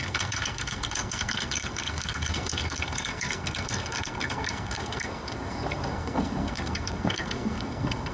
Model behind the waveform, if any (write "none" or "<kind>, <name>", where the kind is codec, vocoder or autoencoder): codec, SNAC